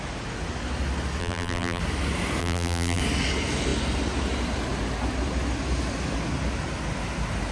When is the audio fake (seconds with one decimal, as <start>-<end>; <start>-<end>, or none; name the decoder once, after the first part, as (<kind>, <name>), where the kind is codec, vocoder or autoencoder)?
1.2-1.8 (vocoder, BigVGAN v2); 2.4-3.0

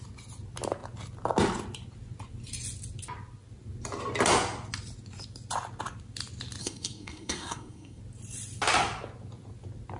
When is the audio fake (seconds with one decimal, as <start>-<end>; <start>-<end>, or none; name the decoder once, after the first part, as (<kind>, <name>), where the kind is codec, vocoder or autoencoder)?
6.6-8.0 (codec, SNAC)

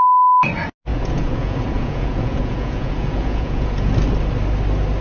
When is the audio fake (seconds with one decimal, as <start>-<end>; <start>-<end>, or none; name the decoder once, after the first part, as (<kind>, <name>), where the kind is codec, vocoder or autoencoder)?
0.9-3.9 (vocoder, Vocos)